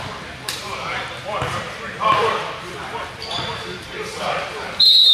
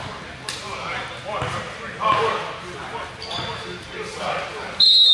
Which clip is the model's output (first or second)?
first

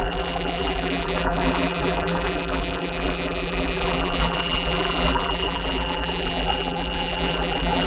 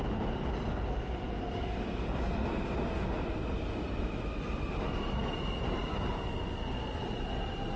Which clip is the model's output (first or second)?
first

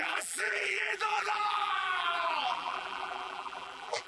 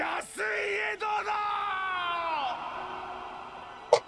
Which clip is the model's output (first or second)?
first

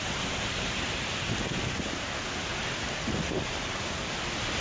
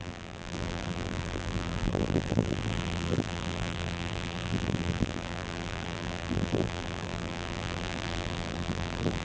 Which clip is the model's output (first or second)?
second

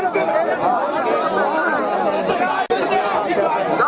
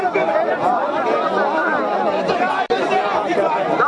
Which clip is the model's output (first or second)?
second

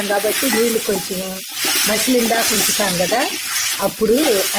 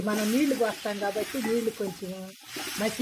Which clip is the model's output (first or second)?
first